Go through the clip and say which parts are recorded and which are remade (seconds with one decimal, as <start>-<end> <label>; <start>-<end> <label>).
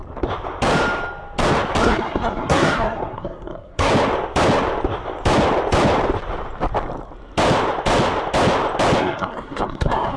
0.0-1.8 recorded; 1.8-3.9 remade; 3.9-9.0 recorded; 9.0-10.2 remade